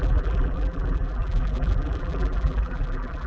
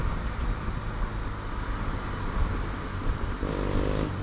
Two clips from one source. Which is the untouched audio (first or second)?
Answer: second